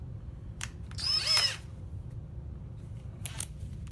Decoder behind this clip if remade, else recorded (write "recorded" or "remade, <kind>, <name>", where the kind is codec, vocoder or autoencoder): remade, vocoder, BigVGAN v2